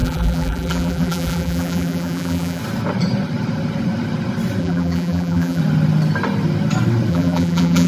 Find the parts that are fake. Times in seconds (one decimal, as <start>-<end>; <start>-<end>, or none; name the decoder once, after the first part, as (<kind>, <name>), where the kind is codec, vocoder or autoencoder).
0.0-2.6 (vocoder, BigVGAN v2); 4.6-5.6; 7.1-7.9